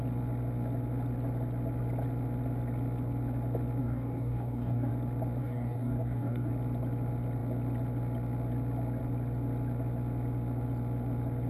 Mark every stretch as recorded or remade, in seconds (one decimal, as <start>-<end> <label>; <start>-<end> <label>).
0.0-3.8 recorded; 3.8-4.9 remade; 4.9-5.4 recorded; 5.4-6.5 remade; 6.5-11.5 recorded

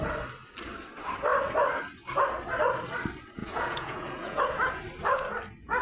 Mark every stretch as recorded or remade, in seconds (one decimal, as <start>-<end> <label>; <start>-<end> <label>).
0.0-3.4 recorded; 3.4-4.4 remade; 4.4-5.8 recorded

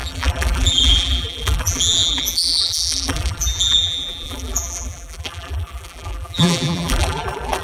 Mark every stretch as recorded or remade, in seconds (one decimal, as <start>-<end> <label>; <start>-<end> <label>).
0.0-7.6 remade

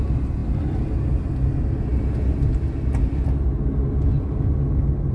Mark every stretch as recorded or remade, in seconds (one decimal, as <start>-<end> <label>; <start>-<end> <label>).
0.0-5.1 recorded

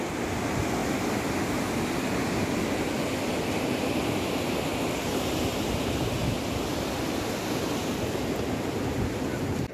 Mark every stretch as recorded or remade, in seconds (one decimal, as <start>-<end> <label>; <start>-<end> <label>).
0.0-9.7 recorded

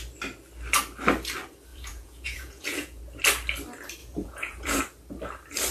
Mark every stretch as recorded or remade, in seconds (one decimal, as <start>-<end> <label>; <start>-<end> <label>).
0.0-1.7 recorded; 1.7-3.0 remade; 3.0-4.0 recorded; 4.0-4.8 remade; 4.8-5.7 recorded

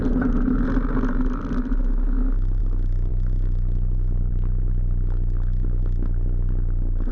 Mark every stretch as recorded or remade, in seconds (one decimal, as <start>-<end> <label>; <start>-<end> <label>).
0.0-7.1 recorded